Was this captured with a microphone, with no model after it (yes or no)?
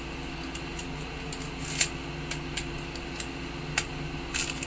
yes